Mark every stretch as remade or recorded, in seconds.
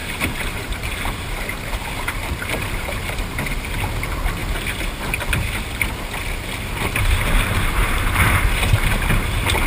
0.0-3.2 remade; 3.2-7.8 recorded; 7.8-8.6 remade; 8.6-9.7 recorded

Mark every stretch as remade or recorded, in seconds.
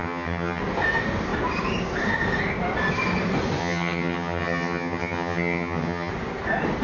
0.0-0.6 remade; 0.6-3.6 recorded; 3.6-6.1 remade; 6.1-6.8 recorded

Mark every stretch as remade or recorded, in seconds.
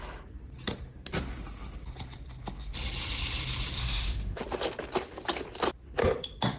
0.0-3.8 recorded; 3.8-4.4 remade; 4.4-6.6 recorded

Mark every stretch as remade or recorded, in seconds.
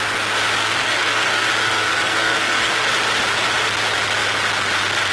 0.0-0.6 recorded; 0.6-2.9 remade; 2.9-5.1 recorded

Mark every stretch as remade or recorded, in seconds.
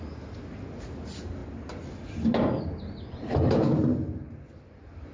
0.0-5.1 recorded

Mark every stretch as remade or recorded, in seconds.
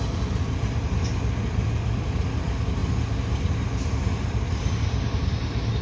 0.0-5.8 recorded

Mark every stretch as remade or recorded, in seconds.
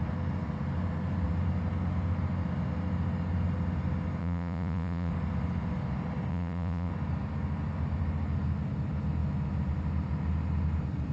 0.0-4.2 recorded; 4.2-5.1 remade; 5.1-6.3 recorded; 6.3-6.9 remade; 6.9-11.1 recorded